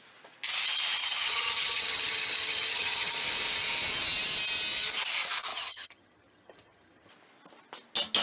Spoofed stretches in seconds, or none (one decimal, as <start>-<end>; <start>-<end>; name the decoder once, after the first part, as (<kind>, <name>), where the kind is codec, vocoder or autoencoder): 1.0-3.2 (vocoder, HiFi-GAN); 5.5-7.1